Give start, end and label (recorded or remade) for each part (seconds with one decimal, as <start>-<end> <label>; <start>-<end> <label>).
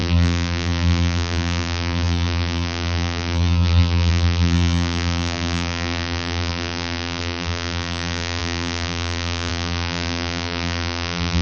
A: 0.0-11.4 remade